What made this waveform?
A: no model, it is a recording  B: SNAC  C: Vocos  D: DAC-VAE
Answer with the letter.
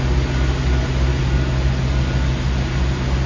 A